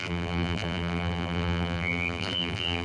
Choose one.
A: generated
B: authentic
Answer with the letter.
A